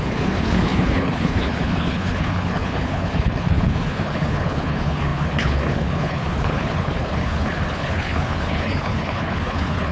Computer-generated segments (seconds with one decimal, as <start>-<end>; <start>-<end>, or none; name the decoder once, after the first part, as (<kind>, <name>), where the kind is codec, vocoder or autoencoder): 0.0-9.9 (codec, HILCodec)